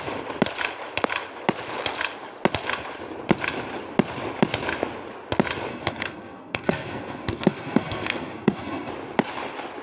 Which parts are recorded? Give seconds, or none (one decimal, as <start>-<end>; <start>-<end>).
0.0-5.7; 8.9-9.8